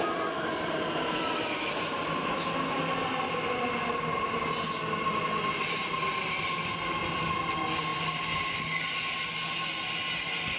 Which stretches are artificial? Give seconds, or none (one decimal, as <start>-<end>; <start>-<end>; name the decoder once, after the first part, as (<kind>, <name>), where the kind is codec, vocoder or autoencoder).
none